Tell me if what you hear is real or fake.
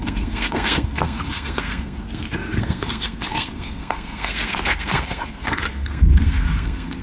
fake